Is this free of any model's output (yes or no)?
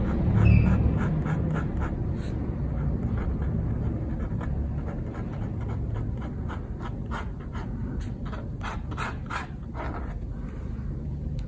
yes